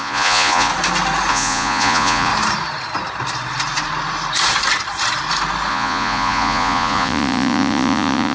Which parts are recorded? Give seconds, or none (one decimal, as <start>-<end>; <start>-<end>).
0.7-1.3; 2.3-5.7